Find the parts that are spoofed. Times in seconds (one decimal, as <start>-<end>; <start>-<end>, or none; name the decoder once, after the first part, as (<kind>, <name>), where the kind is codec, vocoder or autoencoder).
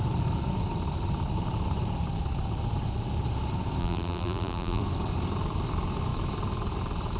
3.8-4.8 (vocoder, BigVGAN v2)